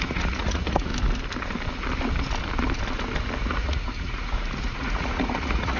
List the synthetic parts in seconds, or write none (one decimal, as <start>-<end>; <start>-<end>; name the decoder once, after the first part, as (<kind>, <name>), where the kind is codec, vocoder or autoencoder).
0.0-0.9 (vocoder, Vocos); 3.4-5.8